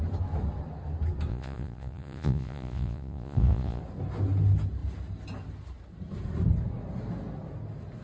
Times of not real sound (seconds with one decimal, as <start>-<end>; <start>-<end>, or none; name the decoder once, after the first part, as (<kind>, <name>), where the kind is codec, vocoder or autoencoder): 1.3-3.8 (vocoder, Vocos)